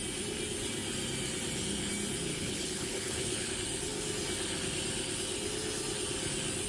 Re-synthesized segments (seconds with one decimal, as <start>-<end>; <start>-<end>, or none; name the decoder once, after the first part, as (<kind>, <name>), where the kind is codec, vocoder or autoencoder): 2.3-3.5 (codec, HILCodec)